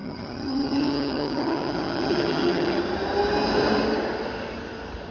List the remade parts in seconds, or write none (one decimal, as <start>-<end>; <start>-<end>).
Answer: 0.0-2.8